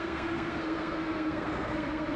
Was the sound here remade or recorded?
remade